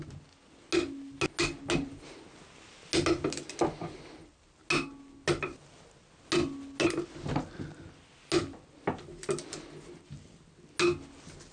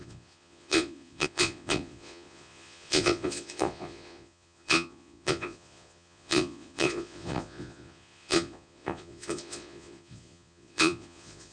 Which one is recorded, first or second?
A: first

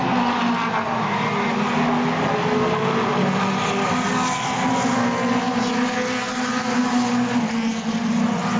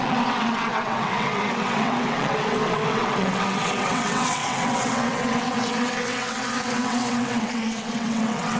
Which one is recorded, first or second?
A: first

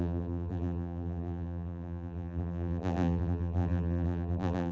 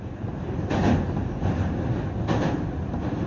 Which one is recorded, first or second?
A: second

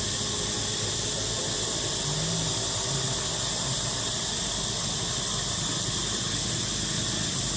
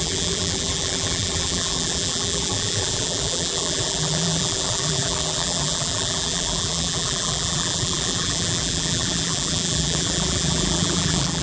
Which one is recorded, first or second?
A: first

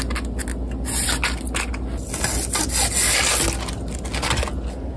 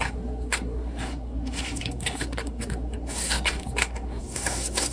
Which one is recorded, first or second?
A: first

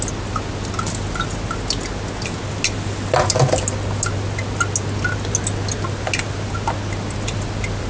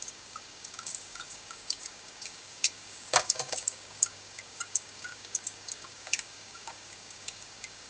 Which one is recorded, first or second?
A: first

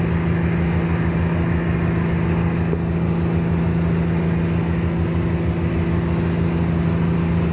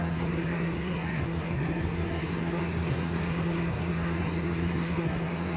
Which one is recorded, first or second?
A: first